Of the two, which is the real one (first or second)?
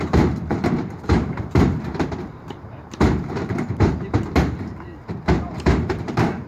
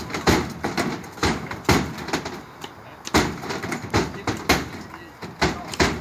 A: second